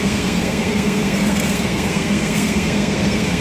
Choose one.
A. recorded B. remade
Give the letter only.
B